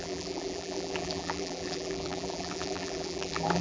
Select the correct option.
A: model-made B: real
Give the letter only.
A